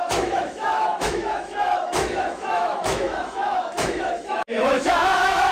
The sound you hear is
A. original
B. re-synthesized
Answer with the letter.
B